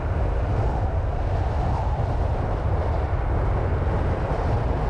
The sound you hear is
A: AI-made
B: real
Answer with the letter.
B